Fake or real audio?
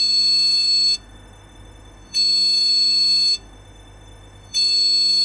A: fake